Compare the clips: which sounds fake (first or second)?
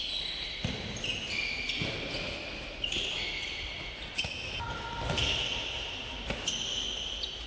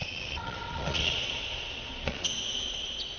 second